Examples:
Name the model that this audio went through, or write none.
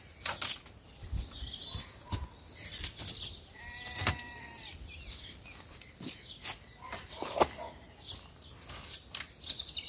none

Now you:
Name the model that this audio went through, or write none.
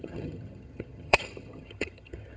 vocoder, HiFi-GAN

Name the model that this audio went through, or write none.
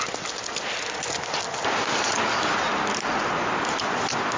none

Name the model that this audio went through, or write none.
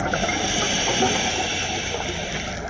none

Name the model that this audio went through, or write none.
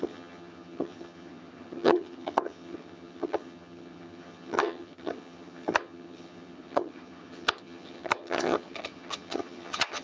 vocoder, HiFi-GAN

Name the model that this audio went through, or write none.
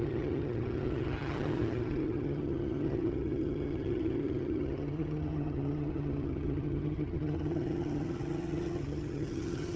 vocoder, HiFi-GAN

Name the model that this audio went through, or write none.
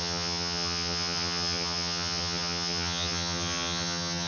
vocoder, HiFi-GAN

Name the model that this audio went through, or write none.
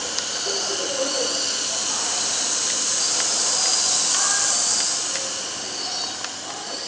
none